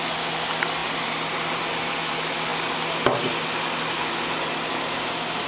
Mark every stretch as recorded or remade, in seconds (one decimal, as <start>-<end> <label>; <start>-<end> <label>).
0.0-5.5 recorded